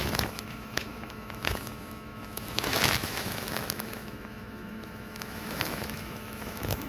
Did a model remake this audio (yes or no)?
yes